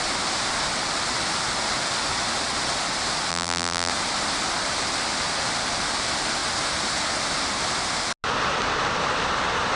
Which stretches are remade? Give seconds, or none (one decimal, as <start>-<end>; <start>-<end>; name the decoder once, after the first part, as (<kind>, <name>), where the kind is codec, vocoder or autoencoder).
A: 3.3-3.9 (vocoder, BigVGAN v2)